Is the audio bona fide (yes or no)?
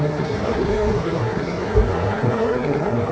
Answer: no